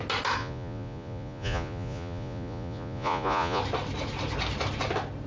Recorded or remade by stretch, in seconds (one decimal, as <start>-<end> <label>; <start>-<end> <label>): 0.0-0.4 recorded; 0.4-3.6 remade; 3.6-5.3 recorded